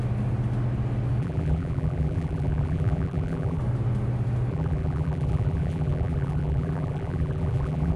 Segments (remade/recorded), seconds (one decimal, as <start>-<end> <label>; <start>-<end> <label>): 0.0-1.2 recorded; 1.2-3.6 remade; 3.6-4.5 recorded; 4.5-8.0 remade